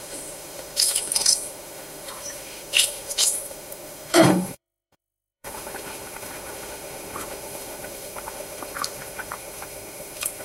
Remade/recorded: remade